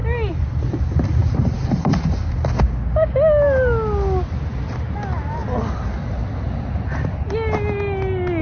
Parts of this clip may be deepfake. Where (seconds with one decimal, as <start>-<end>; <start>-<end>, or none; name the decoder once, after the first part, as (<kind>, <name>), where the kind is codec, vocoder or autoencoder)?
1.2-2.1 (vocoder, BigVGAN v2)